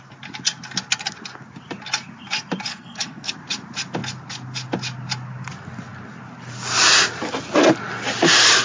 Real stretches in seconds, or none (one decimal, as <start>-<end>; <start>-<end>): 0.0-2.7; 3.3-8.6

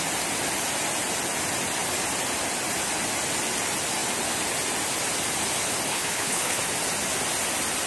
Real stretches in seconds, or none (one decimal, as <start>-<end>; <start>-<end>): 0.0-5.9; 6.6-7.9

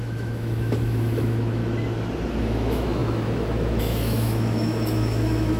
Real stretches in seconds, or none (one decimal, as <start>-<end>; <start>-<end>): 1.6-2.4

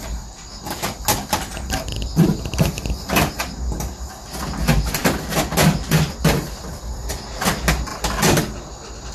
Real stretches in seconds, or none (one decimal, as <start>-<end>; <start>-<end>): 0.0-9.1

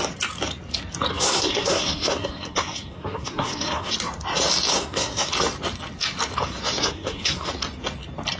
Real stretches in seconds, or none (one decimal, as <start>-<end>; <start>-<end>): 0.0-1.1; 3.9-4.7; 5.3-6.8; 7.5-8.4